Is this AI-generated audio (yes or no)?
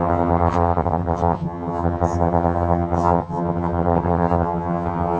yes